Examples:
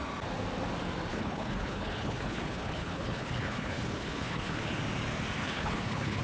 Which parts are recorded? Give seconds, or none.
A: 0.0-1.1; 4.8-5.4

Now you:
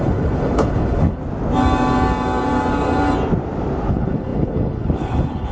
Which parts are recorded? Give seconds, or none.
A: 1.2-3.9

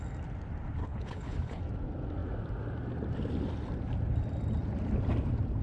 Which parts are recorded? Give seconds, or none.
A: 0.0-0.8; 1.6-5.6

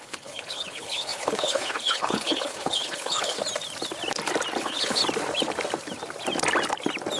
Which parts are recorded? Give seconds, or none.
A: 3.4-4.6; 5.0-7.2